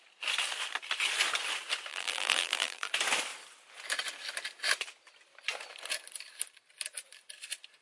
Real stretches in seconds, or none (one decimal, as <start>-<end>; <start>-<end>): 0.0-1.9; 2.9-7.8